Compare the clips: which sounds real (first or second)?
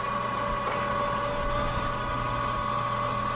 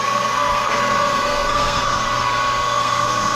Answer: first